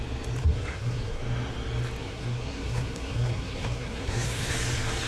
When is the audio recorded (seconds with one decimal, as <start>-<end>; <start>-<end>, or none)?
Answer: 0.0-0.4; 1.2-2.0; 4.5-5.1